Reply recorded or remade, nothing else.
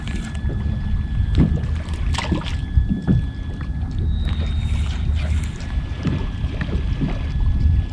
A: recorded